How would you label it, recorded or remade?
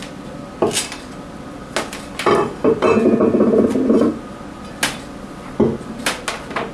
recorded